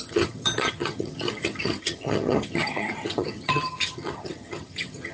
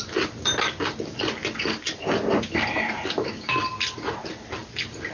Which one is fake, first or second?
first